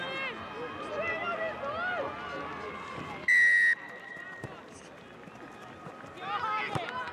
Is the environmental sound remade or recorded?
recorded